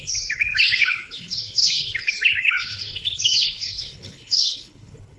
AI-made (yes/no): yes